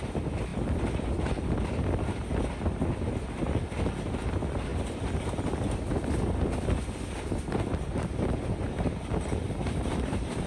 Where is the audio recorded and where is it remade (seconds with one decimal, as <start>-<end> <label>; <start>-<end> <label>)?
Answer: 0.0-9.6 recorded; 9.6-10.5 remade